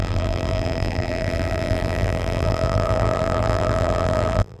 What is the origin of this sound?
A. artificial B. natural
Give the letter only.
A